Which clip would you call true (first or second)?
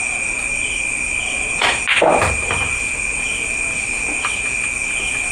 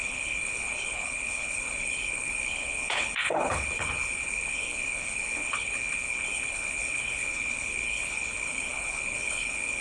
first